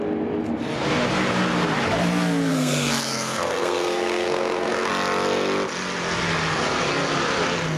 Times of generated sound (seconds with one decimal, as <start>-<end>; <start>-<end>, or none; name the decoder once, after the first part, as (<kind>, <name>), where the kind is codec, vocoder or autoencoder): 2.5-4.9 (codec, SNAC)